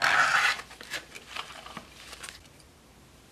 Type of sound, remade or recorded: recorded